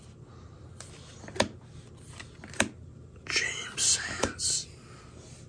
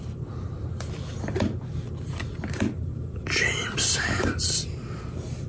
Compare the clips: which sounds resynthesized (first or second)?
second